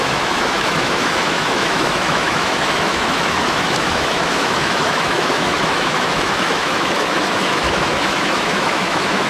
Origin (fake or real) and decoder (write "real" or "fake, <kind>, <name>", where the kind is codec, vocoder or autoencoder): fake, autoencoder, DAC-VAE